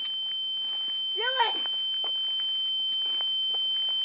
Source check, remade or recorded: recorded